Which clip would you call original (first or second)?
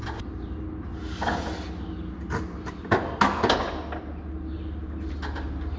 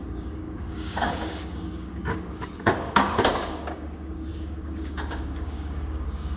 first